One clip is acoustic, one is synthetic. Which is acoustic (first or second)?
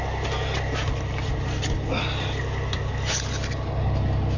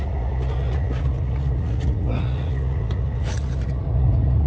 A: first